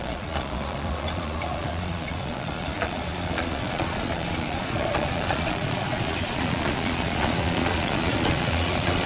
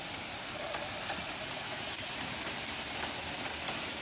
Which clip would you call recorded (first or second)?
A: second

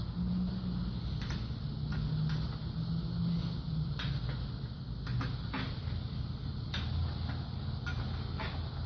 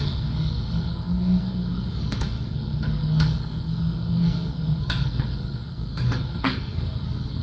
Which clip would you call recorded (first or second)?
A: first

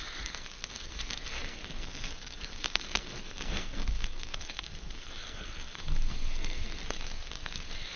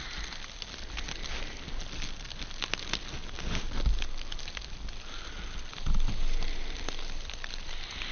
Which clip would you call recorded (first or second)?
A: second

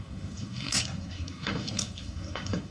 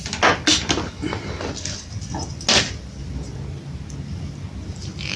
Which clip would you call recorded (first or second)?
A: second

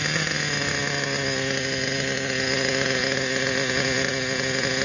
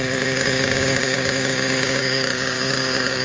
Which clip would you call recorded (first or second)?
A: first